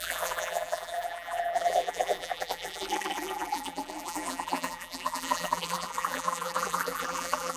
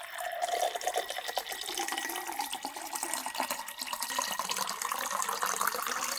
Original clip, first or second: second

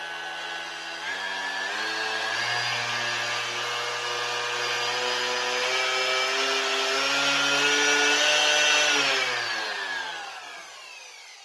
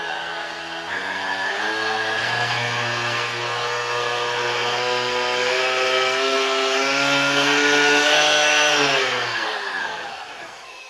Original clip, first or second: first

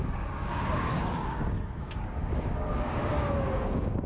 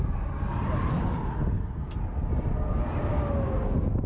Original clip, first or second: second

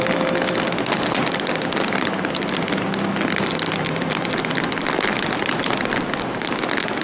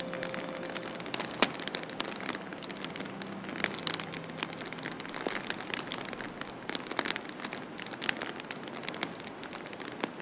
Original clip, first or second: second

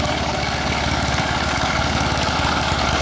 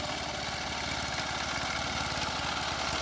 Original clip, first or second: second